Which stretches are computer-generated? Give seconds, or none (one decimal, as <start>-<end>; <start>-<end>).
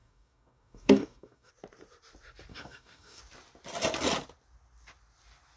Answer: 0.0-1.5; 2.5-3.2